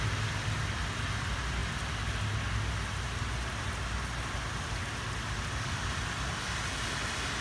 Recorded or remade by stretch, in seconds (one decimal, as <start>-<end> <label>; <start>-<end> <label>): 0.0-7.4 recorded